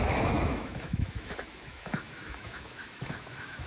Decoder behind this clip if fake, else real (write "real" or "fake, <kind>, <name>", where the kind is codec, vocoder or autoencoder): fake, autoencoder, DAC-VAE